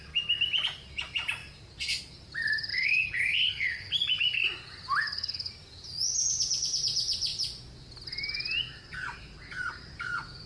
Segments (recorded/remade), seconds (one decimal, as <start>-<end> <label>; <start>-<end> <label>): 0.0-2.7 recorded; 2.7-3.9 remade; 3.9-5.0 recorded; 5.0-5.5 remade; 5.5-10.5 recorded